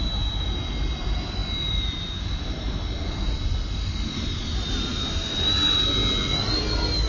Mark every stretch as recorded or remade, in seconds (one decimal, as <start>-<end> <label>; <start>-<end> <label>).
0.0-7.1 recorded